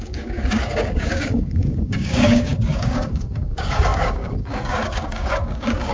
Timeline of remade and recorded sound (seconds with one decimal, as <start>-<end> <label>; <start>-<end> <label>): 0.0-5.9 remade